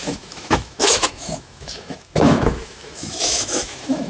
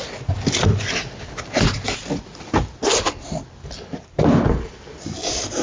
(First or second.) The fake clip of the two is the first